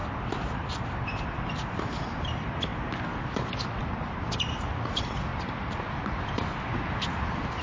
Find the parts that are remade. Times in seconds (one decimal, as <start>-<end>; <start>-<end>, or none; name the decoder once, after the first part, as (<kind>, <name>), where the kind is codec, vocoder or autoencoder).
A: none